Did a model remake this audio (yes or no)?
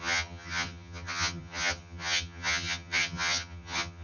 yes